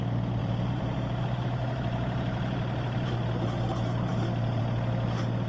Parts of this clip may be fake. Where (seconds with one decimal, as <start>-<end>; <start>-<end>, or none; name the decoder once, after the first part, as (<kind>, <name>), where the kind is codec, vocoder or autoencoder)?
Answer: 0.4-3.1 (vocoder, BigVGAN v2)